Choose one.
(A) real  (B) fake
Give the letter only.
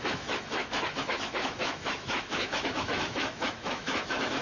B